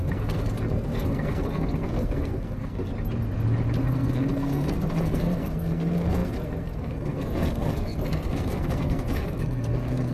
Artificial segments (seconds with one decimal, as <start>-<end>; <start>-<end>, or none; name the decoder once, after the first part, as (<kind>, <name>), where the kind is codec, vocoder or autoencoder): 0.0-2.9 (codec, SNAC); 3.8-10.1